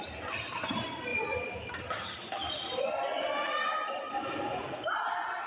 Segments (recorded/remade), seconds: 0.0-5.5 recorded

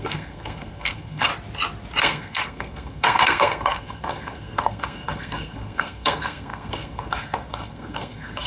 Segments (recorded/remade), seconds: 0.0-1.3 remade; 1.3-2.0 recorded; 2.0-8.5 remade

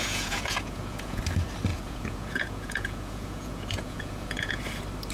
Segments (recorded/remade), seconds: 0.0-1.2 remade; 1.2-1.7 recorded; 1.7-4.6 remade; 4.6-5.1 recorded

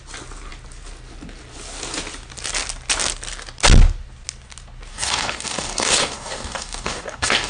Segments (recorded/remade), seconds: 0.0-4.9 recorded; 4.9-7.5 remade

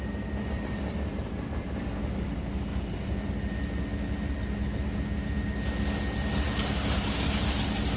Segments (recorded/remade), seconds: 0.0-1.1 recorded; 1.1-1.8 remade; 1.8-2.7 recorded; 2.7-3.3 remade; 3.3-6.3 recorded; 6.3-8.0 remade